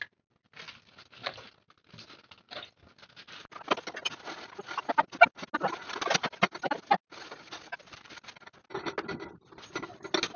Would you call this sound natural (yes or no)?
yes